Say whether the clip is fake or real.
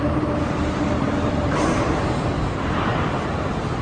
fake